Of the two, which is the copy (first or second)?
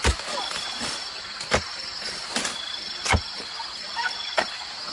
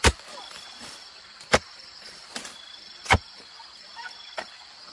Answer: second